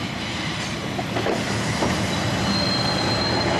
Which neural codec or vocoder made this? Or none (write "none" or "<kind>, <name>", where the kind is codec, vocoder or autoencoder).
none